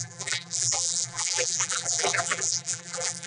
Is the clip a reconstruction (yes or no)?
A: yes